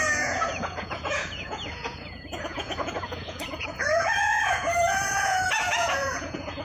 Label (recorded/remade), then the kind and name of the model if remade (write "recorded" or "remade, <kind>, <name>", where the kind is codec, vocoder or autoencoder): remade, vocoder, Vocos